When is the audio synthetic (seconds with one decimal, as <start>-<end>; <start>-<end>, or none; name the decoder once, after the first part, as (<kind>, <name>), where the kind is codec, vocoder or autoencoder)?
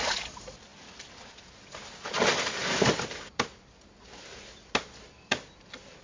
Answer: none